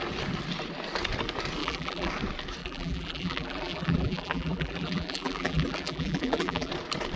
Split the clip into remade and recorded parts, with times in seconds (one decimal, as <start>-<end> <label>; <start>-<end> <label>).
0.0-1.6 recorded; 1.6-2.1 remade; 2.1-2.6 recorded; 2.6-6.7 remade; 6.7-7.2 recorded